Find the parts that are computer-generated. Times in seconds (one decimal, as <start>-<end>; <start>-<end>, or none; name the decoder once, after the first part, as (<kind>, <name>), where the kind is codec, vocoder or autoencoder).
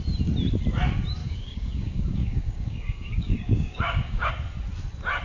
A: 1.2-4.3 (codec, DAC)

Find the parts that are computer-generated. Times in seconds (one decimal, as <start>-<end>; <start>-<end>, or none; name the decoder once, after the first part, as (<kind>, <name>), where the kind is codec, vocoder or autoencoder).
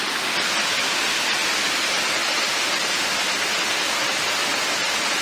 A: none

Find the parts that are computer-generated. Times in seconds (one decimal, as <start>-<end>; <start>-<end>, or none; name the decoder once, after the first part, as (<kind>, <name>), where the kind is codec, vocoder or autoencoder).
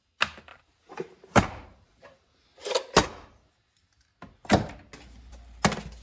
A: 0.5-1.8 (vocoder, BigVGAN v2)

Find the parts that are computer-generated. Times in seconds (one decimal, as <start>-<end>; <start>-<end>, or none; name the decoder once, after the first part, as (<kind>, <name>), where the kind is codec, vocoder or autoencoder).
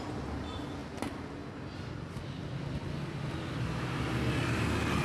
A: none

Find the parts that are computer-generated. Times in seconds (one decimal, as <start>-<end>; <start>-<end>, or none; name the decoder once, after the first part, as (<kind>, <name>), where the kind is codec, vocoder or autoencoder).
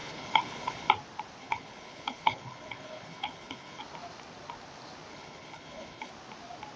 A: 0.0-0.9 (codec, HILCodec); 1.4-3.8; 5.1-6.1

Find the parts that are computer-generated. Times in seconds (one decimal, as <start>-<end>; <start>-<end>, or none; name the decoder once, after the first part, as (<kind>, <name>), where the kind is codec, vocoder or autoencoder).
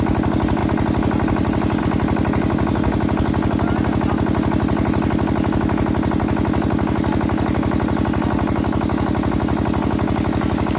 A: none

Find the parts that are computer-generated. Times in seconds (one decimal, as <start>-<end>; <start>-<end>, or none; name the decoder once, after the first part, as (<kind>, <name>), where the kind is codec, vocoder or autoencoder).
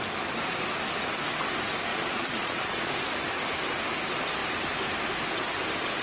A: 1.9-2.9 (vocoder, Vocos)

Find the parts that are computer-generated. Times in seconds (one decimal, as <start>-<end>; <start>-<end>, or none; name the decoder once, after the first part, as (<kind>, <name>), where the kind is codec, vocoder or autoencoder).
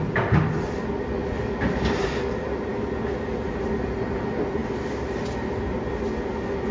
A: 1.2-1.8 (vocoder, BigVGAN v2)